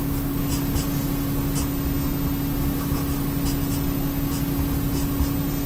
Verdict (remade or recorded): recorded